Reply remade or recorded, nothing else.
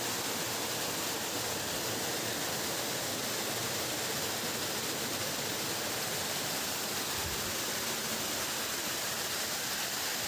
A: recorded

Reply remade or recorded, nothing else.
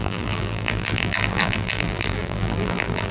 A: remade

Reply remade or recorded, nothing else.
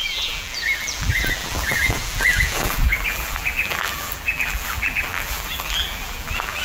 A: remade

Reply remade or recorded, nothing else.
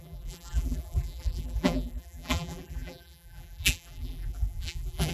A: remade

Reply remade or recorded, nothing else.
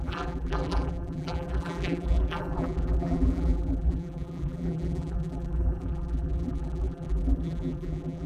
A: remade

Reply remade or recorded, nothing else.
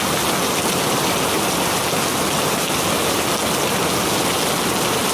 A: recorded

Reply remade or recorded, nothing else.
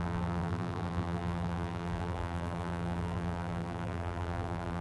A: remade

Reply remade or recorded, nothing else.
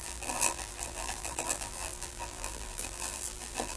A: remade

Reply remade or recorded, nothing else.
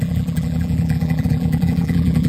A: remade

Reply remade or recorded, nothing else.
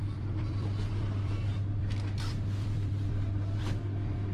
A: remade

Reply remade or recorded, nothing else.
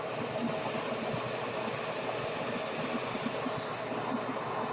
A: recorded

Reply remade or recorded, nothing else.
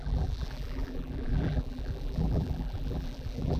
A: remade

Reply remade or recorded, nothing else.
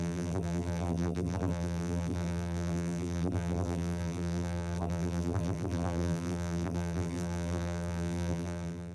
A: remade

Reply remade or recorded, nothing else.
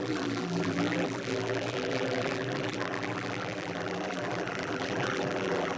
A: remade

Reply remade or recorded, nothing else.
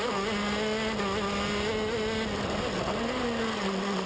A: recorded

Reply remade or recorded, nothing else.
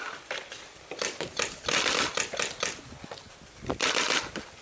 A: recorded